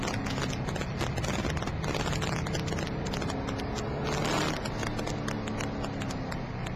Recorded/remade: recorded